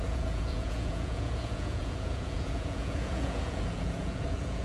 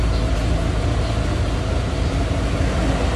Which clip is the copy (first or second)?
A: first